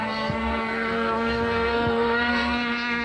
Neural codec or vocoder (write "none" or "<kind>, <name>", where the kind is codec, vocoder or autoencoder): codec, SNAC